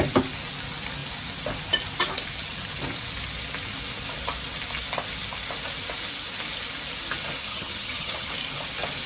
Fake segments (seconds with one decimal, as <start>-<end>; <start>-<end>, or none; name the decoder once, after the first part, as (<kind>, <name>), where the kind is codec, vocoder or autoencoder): 7.5-8.3 (vocoder, HiFi-GAN)